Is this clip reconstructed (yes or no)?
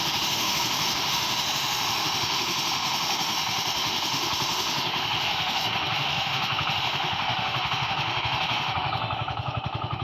yes